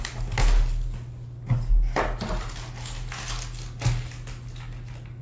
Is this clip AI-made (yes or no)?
no